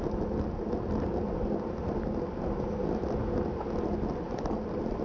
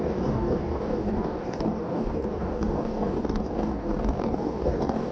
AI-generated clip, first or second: second